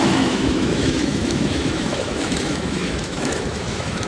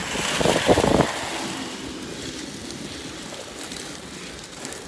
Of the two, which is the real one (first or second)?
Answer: second